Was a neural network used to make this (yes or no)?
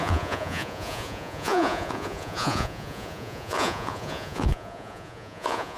yes